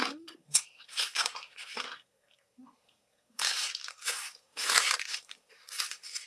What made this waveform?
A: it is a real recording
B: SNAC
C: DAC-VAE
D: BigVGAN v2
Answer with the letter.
B